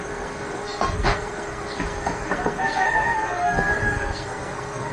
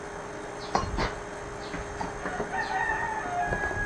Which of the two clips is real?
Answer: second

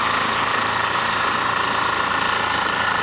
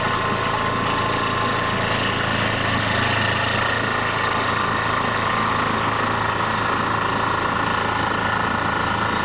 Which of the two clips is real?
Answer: second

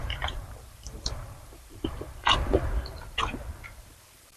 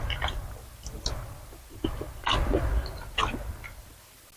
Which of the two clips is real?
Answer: second